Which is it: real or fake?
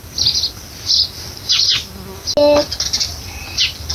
real